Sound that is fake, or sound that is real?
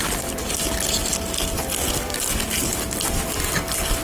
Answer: real